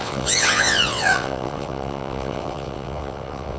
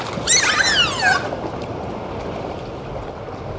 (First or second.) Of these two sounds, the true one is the second